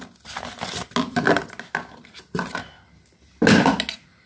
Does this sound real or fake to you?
real